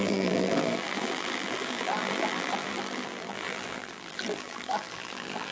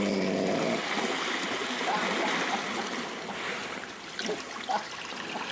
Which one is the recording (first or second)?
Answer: second